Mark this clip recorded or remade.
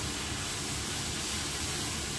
recorded